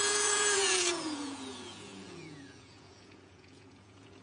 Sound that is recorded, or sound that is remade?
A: remade